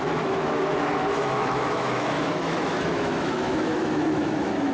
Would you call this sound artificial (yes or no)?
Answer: yes